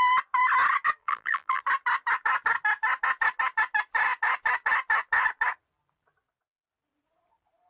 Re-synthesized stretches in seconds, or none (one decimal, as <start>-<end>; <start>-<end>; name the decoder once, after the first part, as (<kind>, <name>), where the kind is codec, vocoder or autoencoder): 1.0-1.6 (vocoder, BigVGAN v2)